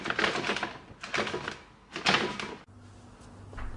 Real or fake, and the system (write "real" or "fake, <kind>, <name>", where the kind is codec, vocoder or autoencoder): real